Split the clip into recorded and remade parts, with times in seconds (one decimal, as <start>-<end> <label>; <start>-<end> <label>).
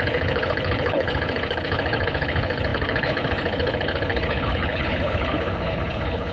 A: 0.0-6.3 remade